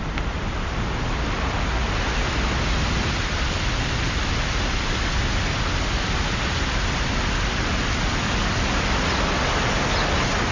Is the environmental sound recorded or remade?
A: recorded